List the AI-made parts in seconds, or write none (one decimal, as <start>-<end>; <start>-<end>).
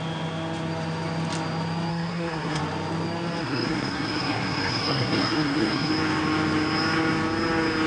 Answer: 1.9-2.6; 3.4-5.9